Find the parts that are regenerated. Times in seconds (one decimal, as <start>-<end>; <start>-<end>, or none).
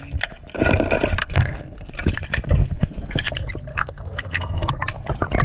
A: 1.2-1.9; 2.6-3.3; 3.7-4.7